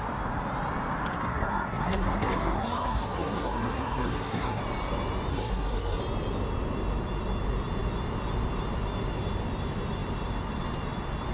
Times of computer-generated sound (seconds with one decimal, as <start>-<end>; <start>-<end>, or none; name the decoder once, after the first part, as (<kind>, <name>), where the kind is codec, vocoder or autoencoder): 1.1-4.6 (codec, SNAC); 5.3-6.0